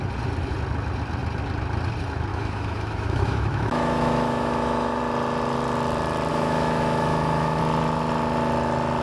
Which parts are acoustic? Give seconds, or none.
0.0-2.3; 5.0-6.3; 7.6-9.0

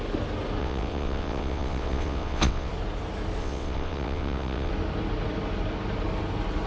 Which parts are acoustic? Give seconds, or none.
0.0-0.6; 2.7-3.4; 4.7-6.7

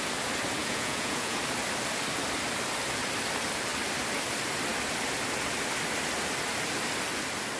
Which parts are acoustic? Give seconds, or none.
0.0-0.6; 1.4-7.6